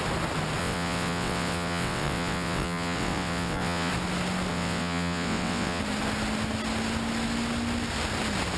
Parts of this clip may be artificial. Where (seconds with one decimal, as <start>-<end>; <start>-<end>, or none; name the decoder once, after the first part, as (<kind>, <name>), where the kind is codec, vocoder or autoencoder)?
0.6-3.9 (vocoder, WaveNeXt); 4.5-5.8